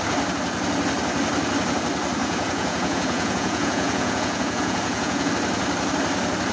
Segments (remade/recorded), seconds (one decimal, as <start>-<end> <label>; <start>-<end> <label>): 0.0-2.2 recorded; 2.2-5.3 remade; 5.3-6.5 recorded